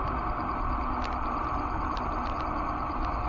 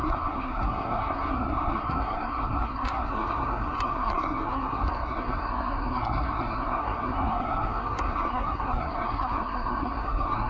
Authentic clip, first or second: first